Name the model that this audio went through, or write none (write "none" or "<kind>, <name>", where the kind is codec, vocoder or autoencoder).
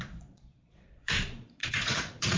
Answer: vocoder, Vocos